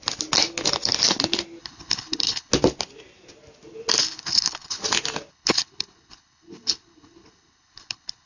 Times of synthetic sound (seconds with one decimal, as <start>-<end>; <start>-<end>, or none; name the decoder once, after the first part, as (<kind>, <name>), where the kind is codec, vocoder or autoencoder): 1.6-2.5 (codec, HILCodec); 4.0-4.8; 5.3-8.3